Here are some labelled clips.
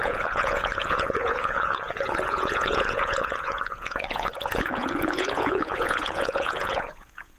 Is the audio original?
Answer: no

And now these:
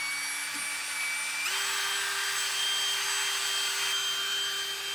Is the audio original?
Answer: yes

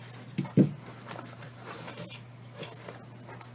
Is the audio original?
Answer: yes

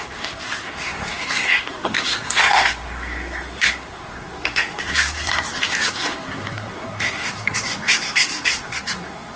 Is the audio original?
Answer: no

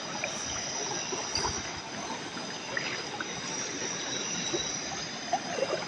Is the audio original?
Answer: yes